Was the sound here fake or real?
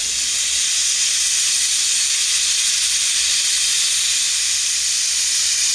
fake